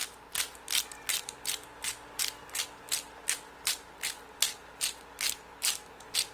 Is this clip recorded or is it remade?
recorded